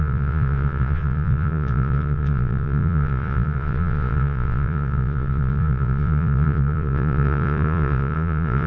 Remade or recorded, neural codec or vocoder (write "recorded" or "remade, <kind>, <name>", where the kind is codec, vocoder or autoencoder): remade, vocoder, Vocos